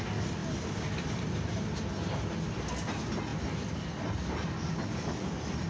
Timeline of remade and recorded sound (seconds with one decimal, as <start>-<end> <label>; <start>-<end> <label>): 0.0-5.7 recorded